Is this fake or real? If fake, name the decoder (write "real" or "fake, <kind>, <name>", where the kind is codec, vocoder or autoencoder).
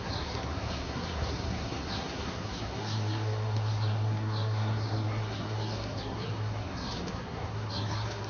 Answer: fake, codec, SNAC